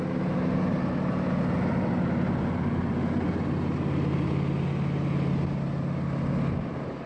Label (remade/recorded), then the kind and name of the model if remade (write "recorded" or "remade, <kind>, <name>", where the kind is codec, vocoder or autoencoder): recorded